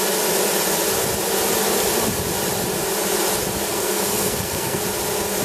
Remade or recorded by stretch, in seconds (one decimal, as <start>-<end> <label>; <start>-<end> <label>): 0.0-3.7 recorded; 3.7-4.8 remade; 4.8-5.4 recorded